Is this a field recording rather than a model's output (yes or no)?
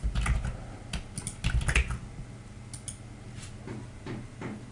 yes